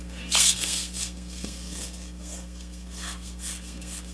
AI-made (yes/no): yes